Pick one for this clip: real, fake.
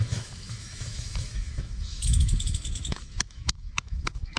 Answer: fake